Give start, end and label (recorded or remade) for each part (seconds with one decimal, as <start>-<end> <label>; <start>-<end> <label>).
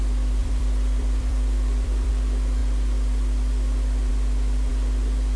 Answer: 0.0-0.4 recorded; 0.4-2.1 remade; 2.1-5.4 recorded